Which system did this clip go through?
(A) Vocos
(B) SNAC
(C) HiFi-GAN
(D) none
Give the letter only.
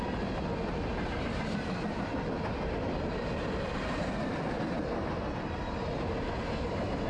D